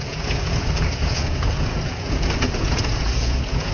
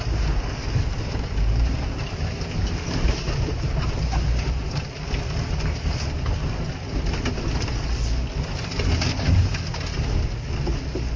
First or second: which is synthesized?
first